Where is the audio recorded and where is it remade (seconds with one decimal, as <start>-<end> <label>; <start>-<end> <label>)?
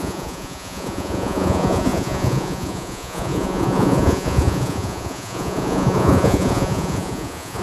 0.0-7.6 remade